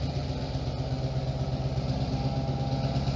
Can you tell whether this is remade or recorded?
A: recorded